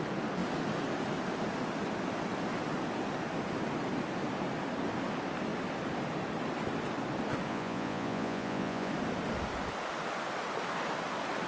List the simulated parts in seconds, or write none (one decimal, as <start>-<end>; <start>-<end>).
7.5-8.9